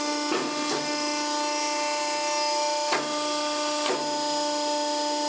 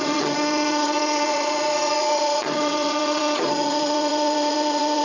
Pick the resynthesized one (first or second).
second